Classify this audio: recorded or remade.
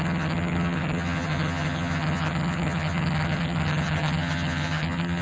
remade